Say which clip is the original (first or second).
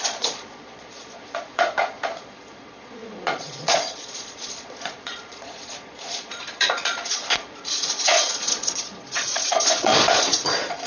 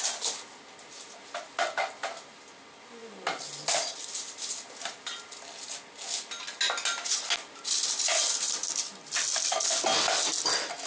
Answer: second